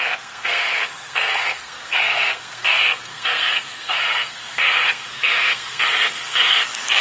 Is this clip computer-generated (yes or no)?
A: yes